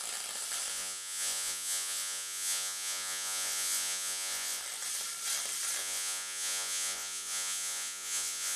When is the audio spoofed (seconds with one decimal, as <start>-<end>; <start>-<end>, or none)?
0.7-4.6; 5.8-8.6

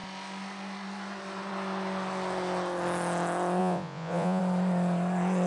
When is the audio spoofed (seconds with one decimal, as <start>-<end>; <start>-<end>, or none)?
3.6-4.4

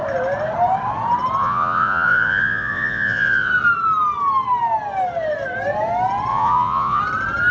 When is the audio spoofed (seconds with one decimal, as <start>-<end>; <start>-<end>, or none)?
1.4-3.5; 6.3-7.0

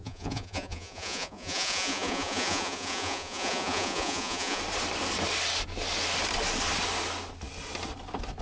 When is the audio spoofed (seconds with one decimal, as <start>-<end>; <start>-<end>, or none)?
0.0-4.6

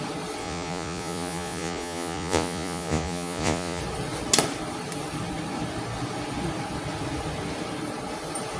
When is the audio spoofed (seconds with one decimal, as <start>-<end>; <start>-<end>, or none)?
0.4-3.8

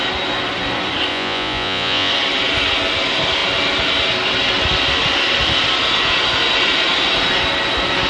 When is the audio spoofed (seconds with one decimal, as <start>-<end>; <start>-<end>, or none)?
1.1-2.1

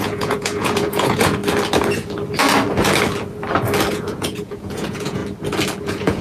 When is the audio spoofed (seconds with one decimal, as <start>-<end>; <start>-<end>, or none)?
0.0-1.4; 3.9-5.2; 5.8-6.2

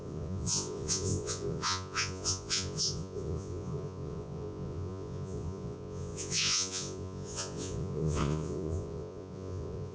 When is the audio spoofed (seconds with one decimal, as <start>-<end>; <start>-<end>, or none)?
0.0-9.9